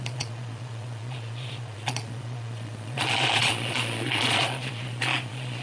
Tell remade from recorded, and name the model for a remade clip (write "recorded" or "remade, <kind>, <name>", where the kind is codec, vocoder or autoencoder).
remade, vocoder, Vocos